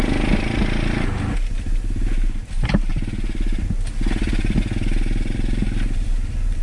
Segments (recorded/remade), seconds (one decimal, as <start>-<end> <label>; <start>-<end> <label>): 0.0-6.6 recorded